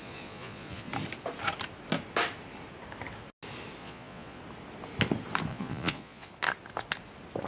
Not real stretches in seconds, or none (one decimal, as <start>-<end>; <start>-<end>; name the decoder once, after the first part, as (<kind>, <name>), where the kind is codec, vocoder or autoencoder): 0.0-0.9 (vocoder, Vocos); 3.8-4.4; 5.5-6.3